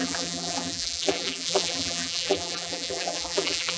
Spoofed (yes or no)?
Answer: yes